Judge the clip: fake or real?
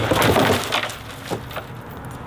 real